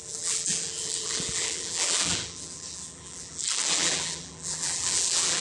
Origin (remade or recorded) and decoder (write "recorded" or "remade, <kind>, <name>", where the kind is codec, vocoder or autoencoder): remade, vocoder, BigVGAN v2